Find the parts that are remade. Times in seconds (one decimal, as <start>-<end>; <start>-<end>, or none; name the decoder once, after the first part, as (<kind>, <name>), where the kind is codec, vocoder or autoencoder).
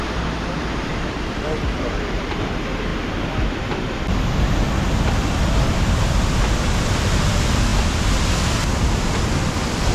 0.0-2.9 (vocoder, BigVGAN v2); 7.2-9.9